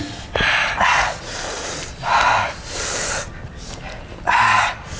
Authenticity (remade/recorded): recorded